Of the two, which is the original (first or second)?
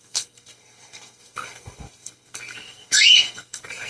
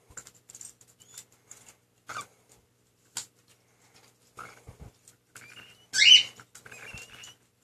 second